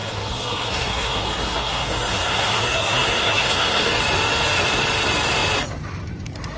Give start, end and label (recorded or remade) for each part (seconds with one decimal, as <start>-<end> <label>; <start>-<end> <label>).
0.0-4.0 remade; 4.0-6.6 recorded